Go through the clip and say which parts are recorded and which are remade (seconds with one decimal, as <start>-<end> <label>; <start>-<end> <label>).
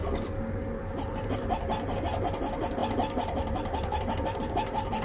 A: 0.0-5.0 recorded